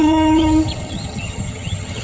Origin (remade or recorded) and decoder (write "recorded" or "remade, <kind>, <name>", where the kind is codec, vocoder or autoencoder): remade, vocoder, HiFi-GAN